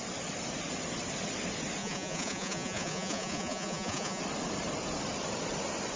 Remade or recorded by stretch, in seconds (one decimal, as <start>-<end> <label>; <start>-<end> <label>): 0.0-1.8 recorded; 1.8-4.2 remade; 4.2-6.0 recorded